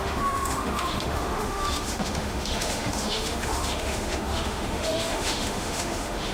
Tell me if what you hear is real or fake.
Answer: fake